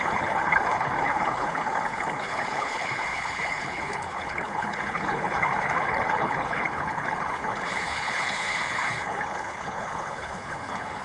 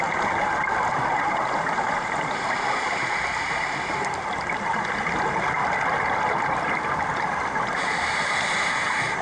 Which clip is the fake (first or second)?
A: first